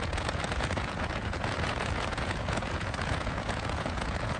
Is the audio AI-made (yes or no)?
yes